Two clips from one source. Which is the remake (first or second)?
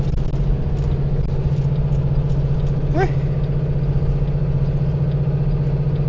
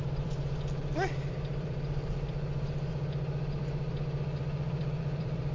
second